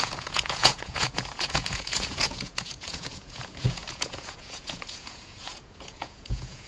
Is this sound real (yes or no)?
no